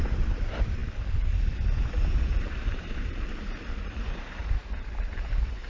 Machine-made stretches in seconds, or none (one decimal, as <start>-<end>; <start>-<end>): 0.0-0.8; 2.4-5.7